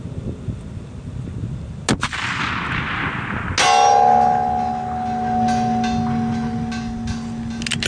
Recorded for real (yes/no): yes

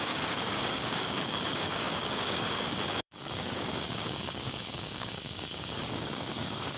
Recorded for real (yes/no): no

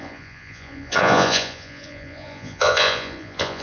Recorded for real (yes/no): no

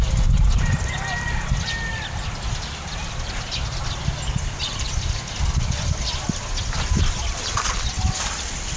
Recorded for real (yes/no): yes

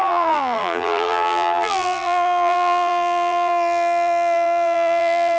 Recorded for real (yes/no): no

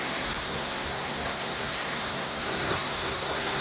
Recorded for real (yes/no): no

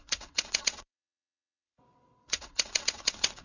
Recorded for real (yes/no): no